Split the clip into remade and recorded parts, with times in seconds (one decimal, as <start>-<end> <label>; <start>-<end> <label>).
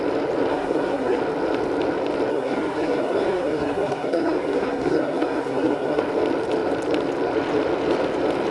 0.0-0.5 recorded; 0.5-1.2 remade; 1.2-2.3 recorded; 2.3-6.0 remade; 6.0-8.5 recorded